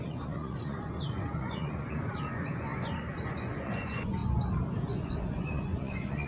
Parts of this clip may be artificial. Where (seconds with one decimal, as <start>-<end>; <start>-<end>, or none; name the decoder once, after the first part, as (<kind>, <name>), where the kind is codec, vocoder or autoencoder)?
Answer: 0.0-4.2 (vocoder, Vocos); 4.8-6.3